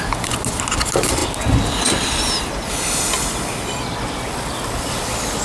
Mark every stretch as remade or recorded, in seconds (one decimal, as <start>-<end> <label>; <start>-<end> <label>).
0.0-5.4 recorded